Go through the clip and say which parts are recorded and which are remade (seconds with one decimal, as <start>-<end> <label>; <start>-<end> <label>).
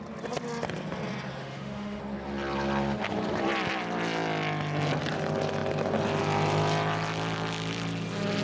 0.0-1.4 recorded; 1.4-2.0 remade; 2.0-8.4 recorded